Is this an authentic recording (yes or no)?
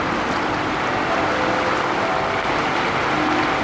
yes